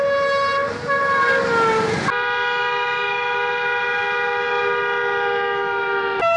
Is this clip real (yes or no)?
yes